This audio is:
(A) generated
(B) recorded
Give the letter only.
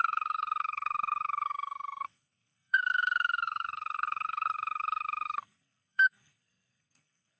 A